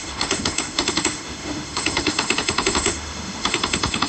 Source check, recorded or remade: remade